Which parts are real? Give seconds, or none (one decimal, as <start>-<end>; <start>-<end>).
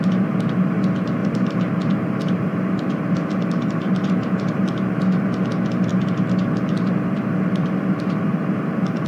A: 0.0-1.2; 5.0-5.9